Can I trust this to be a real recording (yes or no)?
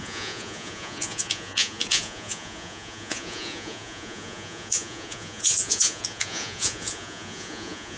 no